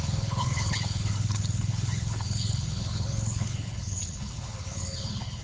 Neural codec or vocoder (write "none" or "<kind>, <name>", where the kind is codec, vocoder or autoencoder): codec, HILCodec